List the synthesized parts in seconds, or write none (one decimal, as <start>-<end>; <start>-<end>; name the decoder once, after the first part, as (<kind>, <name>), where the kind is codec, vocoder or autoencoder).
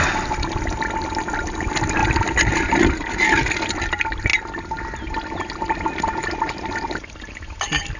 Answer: none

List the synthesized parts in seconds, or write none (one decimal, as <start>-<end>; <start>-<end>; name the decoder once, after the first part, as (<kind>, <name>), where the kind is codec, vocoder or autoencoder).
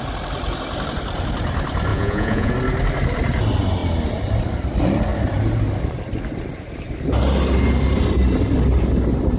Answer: 1.9-2.5 (vocoder, Vocos)